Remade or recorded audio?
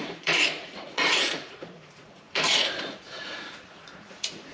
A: remade